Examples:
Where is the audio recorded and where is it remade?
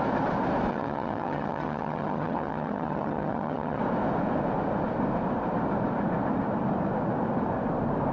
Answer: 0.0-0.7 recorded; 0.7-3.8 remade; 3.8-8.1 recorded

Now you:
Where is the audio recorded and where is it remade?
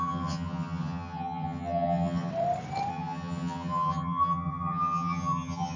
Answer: 0.0-2.3 remade; 2.3-2.9 recorded; 2.9-5.8 remade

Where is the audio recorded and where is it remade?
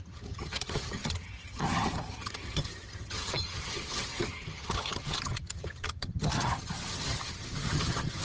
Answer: 0.0-8.2 remade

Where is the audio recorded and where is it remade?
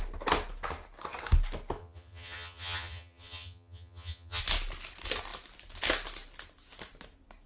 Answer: 0.0-1.8 recorded; 1.8-4.4 remade; 4.4-7.5 recorded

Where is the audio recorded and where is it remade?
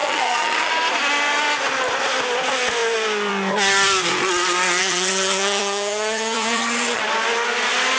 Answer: 0.0-0.7 remade; 0.7-4.8 recorded; 4.8-7.0 remade; 7.0-8.0 recorded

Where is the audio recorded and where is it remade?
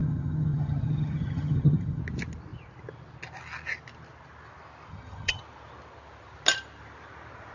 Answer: 0.0-2.0 remade; 2.0-4.9 recorded; 4.9-5.4 remade; 5.4-7.5 recorded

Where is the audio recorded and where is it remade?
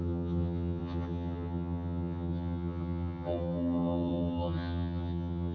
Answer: 0.0-5.5 remade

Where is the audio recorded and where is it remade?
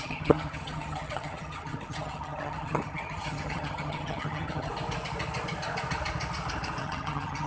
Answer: 0.0-4.7 remade; 4.7-6.8 recorded; 6.8-7.5 remade